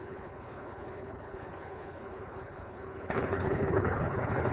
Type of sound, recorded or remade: remade